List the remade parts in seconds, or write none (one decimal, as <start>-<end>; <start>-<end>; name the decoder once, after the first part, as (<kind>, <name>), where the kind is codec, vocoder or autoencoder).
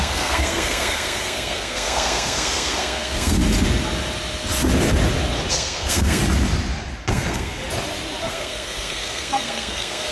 0.0-3.4 (codec, SNAC); 5.5-6.2; 7.1-7.6; 8.3-10.1